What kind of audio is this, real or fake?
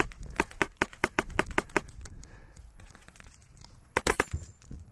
fake